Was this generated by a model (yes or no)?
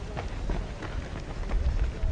no